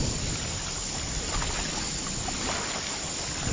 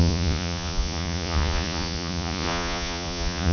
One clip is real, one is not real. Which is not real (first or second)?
second